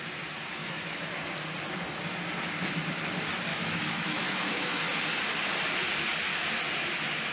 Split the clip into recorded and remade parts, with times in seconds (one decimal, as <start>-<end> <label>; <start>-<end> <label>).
0.0-0.6 recorded; 0.6-1.1 remade; 1.1-3.5 recorded; 3.5-4.8 remade; 4.8-7.3 recorded